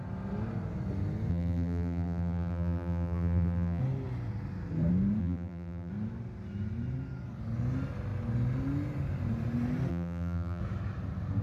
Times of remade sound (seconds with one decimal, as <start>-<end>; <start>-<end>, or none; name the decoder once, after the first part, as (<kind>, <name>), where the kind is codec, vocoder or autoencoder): 1.3-3.8 (vocoder, BigVGAN v2); 5.2-5.9; 9.9-10.6